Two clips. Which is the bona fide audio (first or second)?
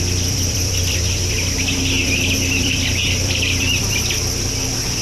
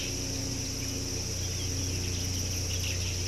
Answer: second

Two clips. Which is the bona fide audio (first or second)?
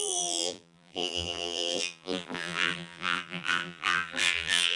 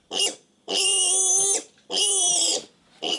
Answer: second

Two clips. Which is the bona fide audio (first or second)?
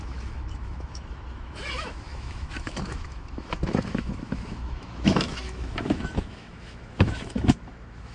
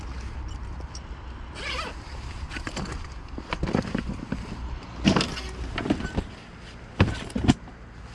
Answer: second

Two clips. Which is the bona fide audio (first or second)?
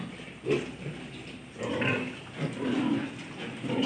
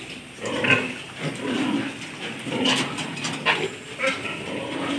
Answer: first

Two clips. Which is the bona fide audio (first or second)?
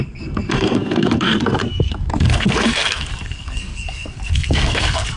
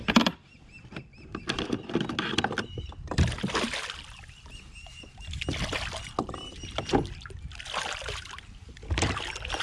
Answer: second